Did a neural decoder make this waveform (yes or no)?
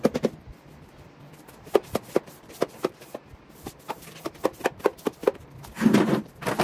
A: yes